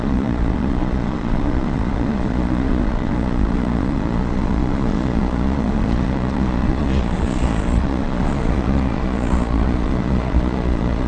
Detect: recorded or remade remade